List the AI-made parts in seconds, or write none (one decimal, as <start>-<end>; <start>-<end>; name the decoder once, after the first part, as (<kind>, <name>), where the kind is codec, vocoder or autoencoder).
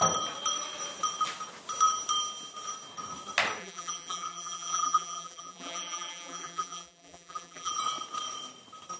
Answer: 3.6-7.7 (vocoder, BigVGAN v2)